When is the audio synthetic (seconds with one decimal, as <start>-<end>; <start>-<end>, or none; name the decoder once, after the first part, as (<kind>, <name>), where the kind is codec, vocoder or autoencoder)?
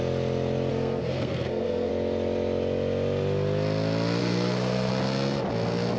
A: 0.7-1.9 (codec, SNAC); 4.2-4.9